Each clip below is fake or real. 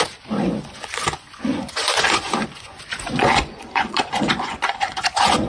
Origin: fake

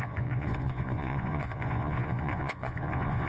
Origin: fake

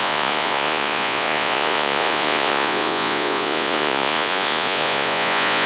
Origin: fake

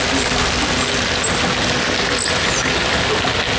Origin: real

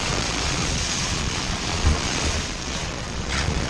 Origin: fake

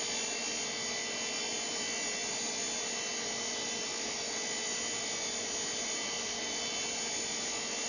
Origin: real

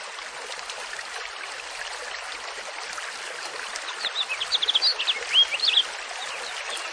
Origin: real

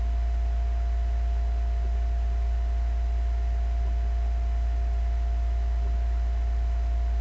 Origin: real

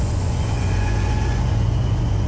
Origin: fake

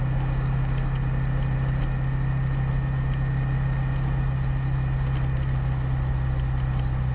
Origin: real